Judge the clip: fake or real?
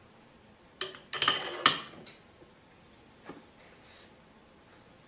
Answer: real